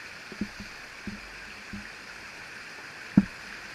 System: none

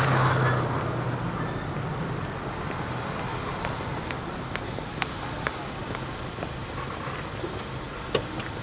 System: none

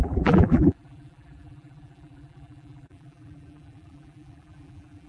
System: vocoder, BigVGAN v2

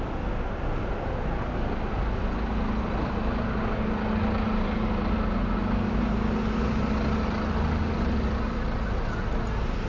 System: none